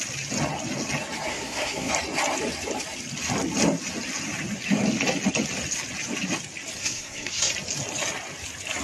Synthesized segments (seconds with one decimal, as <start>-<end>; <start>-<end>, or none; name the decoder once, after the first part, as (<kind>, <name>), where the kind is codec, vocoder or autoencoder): 1.3-1.9 (codec, SNAC); 6.8-7.5